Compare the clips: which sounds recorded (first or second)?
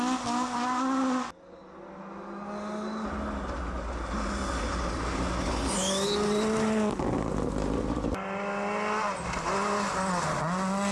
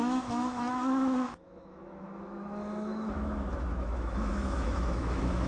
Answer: first